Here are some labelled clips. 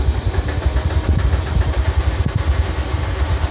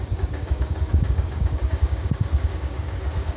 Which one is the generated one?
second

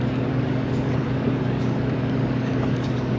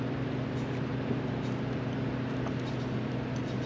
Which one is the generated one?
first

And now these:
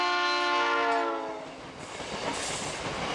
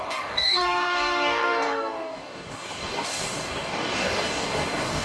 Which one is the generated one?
second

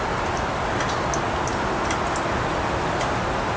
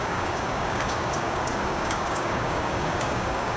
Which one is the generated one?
second